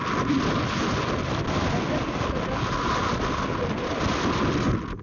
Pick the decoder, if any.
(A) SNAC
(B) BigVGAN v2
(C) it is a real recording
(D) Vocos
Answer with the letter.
C